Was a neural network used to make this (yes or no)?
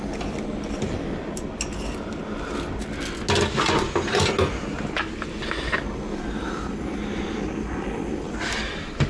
no